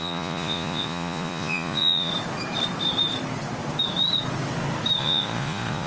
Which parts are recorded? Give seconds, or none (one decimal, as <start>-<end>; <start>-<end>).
2.1-5.0